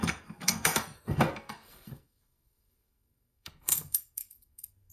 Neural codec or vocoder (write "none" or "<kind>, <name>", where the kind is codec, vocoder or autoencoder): codec, SNAC